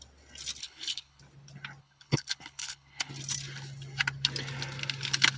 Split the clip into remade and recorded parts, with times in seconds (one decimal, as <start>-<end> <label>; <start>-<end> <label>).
0.0-0.6 recorded; 0.6-1.2 remade; 1.2-1.8 recorded; 1.8-3.1 remade; 3.1-5.4 recorded